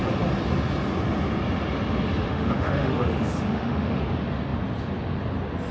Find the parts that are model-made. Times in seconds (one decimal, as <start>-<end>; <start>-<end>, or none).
2.3-4.0